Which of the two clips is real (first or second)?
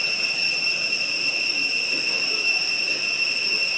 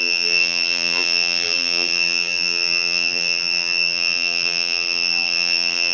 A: first